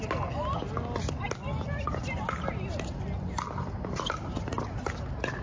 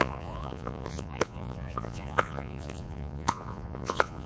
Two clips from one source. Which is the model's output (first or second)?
second